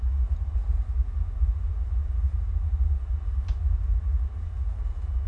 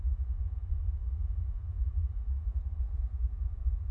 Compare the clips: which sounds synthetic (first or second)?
second